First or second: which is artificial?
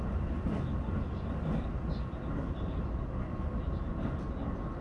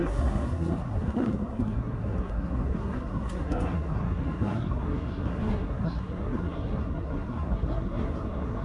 second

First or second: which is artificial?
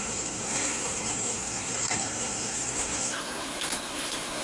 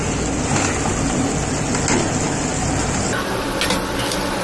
first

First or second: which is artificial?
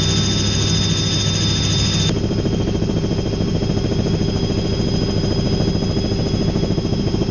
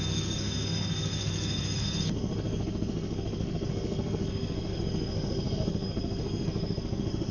second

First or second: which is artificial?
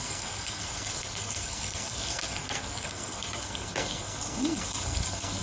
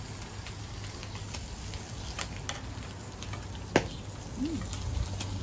first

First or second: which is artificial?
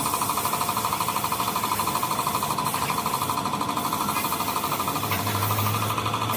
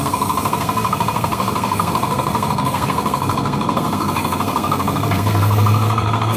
second